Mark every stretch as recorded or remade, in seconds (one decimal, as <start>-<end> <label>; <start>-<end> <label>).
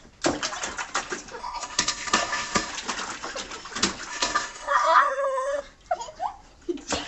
0.0-1.4 recorded; 1.4-2.7 remade; 2.7-4.1 recorded; 4.1-5.6 remade; 5.6-7.1 recorded